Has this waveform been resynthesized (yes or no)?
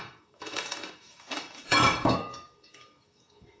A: yes